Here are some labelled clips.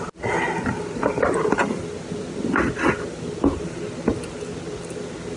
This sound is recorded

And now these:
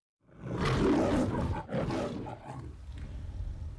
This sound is recorded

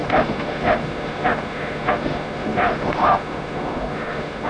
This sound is remade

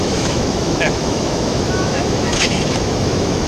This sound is remade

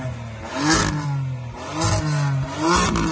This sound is recorded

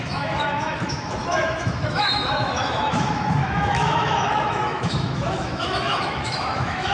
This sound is remade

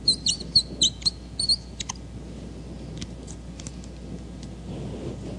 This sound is recorded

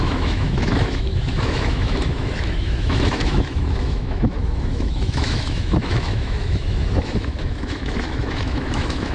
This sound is remade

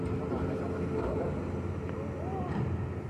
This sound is recorded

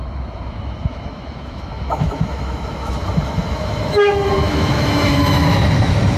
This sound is remade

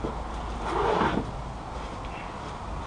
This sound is recorded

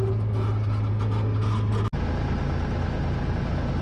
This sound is recorded